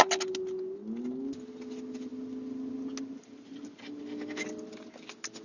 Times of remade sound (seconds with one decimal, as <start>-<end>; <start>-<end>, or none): 3.2-4.0